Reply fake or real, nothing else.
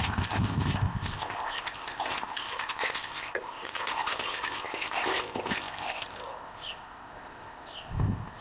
fake